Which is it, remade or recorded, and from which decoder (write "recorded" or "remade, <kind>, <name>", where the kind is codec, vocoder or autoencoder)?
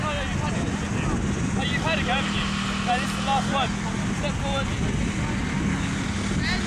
recorded